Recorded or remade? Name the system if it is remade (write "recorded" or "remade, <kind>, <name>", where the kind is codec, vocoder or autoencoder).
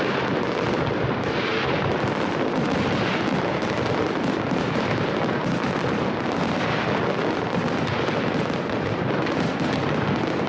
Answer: remade, vocoder, BigVGAN v2